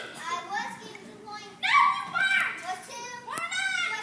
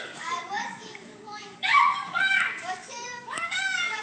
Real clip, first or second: first